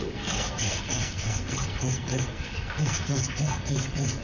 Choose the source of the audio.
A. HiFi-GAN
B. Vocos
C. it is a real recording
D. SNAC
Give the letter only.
D